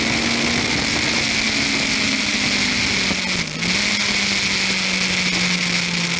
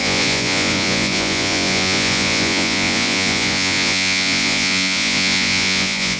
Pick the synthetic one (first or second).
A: second